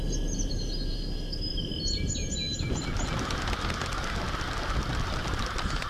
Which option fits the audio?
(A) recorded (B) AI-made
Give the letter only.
A